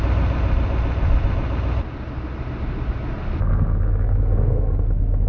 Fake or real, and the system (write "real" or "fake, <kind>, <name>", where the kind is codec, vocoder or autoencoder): real